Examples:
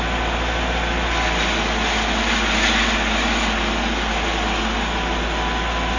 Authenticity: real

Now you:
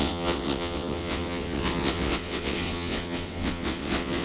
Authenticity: fake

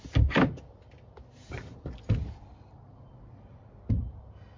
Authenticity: real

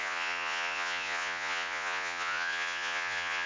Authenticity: fake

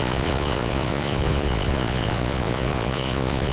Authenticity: fake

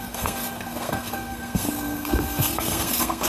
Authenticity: fake